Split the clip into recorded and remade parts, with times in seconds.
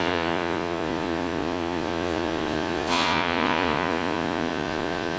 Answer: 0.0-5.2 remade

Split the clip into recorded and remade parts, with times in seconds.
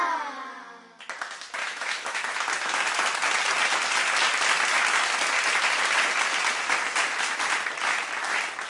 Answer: 0.0-1.6 recorded; 1.6-2.3 remade; 2.3-8.7 recorded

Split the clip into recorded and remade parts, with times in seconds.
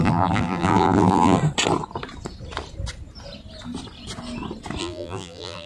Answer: 0.0-1.4 remade; 1.4-4.8 recorded; 4.8-5.7 remade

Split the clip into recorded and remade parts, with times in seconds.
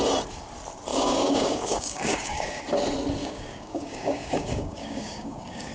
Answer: 0.0-0.9 recorded; 0.9-2.6 remade; 2.6-3.2 recorded; 3.2-5.7 remade